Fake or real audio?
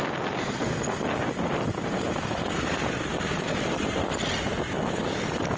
real